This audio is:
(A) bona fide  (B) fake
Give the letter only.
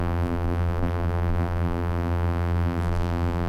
B